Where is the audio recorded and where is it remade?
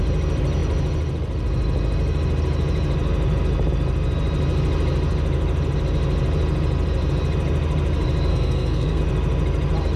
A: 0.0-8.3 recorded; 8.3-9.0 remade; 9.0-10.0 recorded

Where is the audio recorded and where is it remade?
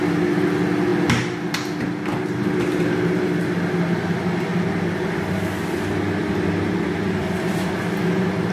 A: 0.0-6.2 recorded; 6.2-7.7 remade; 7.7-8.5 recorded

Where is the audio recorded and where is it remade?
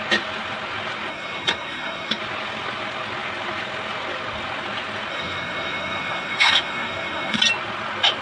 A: 0.0-1.1 recorded; 1.1-2.2 remade; 2.2-5.1 recorded; 5.1-7.4 remade; 7.4-8.2 recorded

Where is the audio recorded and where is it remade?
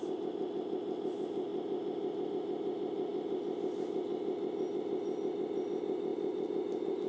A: 0.0-6.1 recorded; 6.1-7.1 remade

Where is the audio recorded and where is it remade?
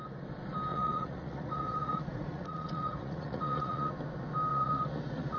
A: 0.0-0.7 recorded; 0.7-3.9 remade; 3.9-4.5 recorded; 4.5-5.4 remade